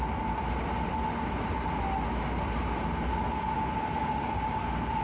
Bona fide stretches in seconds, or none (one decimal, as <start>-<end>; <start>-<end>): 0.0-4.2